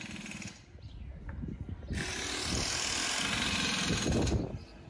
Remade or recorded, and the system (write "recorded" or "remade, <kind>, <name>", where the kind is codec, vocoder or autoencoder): recorded